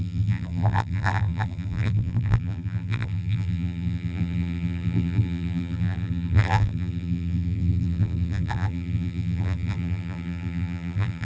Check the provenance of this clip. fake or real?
fake